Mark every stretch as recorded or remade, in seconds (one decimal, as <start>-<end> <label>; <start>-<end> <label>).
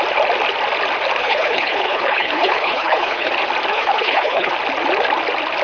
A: 0.0-1.2 recorded; 1.2-3.3 remade; 3.3-3.7 recorded; 3.7-4.5 remade; 4.5-5.6 recorded